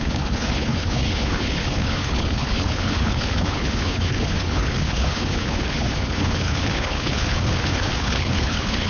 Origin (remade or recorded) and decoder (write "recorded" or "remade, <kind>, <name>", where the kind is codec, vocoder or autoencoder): remade, codec, HILCodec